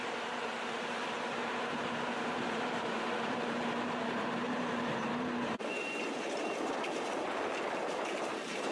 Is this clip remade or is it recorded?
remade